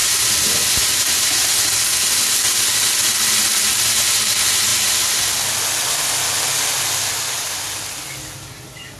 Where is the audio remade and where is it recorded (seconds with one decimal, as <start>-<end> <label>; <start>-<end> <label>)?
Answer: 0.0-9.0 recorded